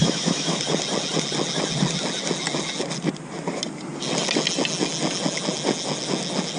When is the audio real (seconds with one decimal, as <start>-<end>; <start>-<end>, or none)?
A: 0.6-6.6